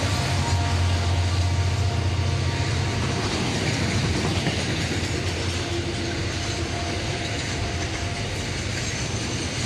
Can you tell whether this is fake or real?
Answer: real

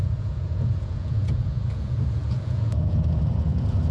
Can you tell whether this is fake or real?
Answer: fake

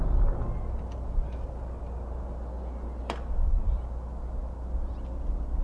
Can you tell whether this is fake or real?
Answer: real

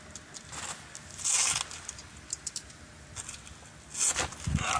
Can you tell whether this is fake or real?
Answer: real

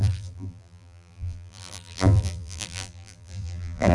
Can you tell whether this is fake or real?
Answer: fake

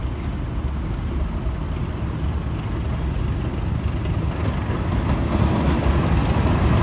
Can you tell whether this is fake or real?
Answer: real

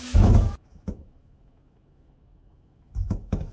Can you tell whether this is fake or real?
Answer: fake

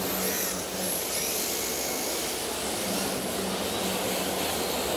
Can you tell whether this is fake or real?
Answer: real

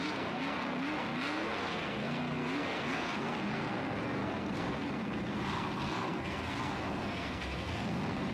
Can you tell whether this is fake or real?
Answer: fake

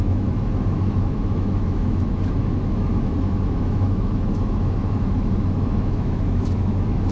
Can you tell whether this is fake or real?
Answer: fake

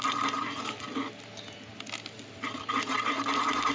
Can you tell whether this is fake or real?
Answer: real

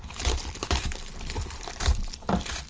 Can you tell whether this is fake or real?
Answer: fake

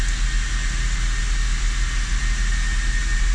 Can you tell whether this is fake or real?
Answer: real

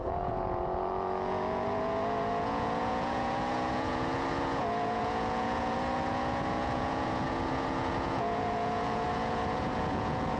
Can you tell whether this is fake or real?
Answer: fake